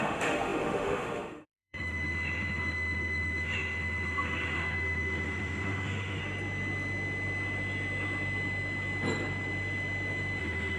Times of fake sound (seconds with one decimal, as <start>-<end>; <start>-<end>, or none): 0.0-6.2; 10.4-10.8